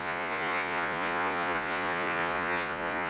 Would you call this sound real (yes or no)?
no